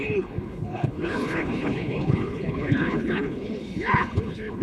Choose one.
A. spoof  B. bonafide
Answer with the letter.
A